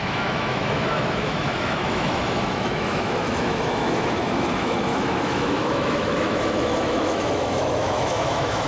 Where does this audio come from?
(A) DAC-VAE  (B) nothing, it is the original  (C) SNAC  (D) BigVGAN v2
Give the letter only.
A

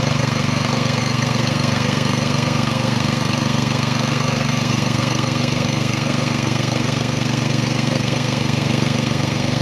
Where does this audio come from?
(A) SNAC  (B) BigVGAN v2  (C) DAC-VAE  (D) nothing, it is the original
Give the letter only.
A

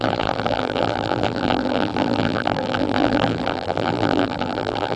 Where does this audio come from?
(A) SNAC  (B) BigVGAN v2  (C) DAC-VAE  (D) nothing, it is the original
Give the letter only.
B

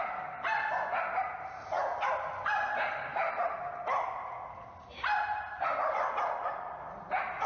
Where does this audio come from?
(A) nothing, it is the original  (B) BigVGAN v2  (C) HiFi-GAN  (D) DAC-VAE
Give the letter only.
A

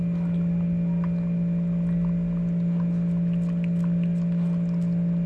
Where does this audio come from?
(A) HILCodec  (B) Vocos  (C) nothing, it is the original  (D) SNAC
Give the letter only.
C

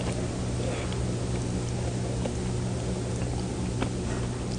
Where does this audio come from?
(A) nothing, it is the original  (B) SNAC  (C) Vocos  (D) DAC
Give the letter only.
A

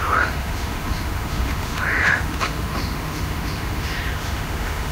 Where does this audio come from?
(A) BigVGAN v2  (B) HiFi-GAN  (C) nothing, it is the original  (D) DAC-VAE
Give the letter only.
D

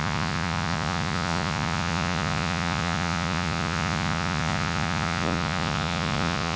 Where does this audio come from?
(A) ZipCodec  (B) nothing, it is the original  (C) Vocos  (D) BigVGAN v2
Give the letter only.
C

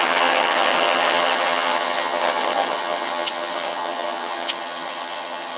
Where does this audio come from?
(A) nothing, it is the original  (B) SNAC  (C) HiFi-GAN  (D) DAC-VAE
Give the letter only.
C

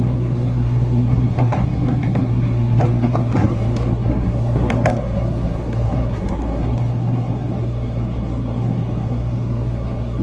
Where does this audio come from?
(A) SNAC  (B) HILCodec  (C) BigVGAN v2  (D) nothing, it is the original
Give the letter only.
A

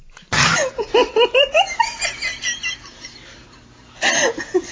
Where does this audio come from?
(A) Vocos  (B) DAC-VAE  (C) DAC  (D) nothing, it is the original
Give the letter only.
D